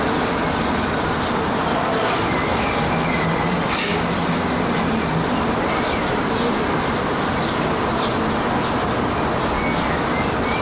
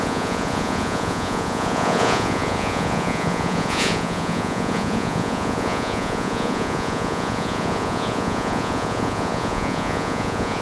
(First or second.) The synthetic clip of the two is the second